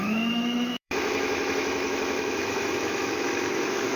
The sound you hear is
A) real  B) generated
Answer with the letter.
B